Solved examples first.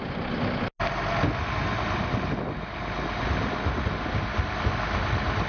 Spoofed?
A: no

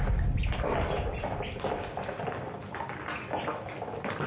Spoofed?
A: no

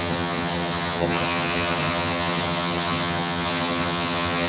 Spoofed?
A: yes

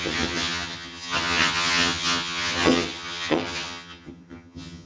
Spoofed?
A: yes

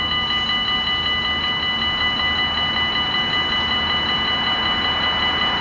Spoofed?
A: no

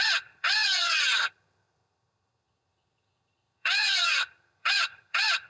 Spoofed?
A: yes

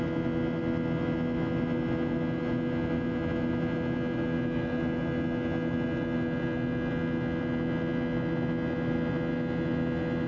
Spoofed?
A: no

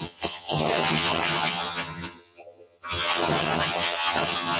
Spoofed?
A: yes